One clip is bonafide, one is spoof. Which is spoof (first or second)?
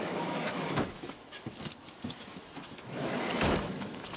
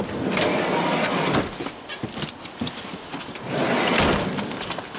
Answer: first